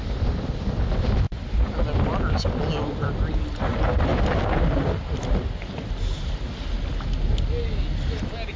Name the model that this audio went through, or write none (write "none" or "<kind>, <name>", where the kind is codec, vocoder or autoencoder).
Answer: none